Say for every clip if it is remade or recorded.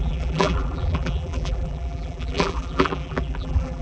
remade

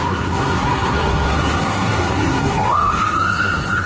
remade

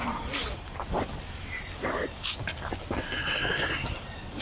recorded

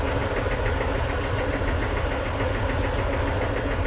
recorded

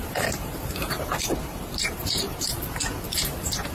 remade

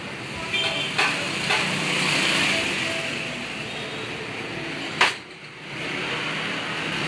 recorded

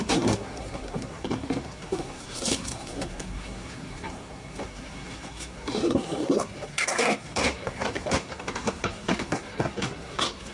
remade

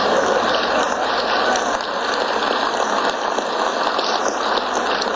recorded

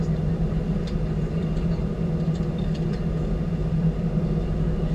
recorded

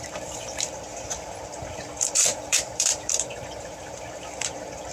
remade